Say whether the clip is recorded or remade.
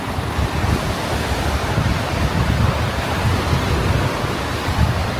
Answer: recorded